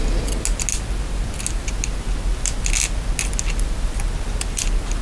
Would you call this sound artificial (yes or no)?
no